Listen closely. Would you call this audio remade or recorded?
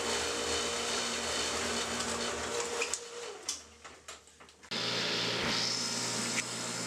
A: recorded